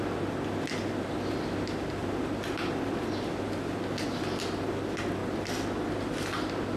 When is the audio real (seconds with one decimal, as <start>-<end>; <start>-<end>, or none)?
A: 0.0-6.8